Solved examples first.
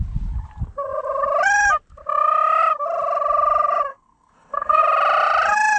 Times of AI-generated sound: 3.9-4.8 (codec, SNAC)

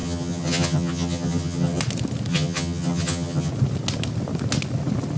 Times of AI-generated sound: 0.0-1.8 (vocoder, HiFi-GAN); 2.3-3.5

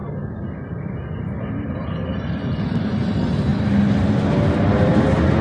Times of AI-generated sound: none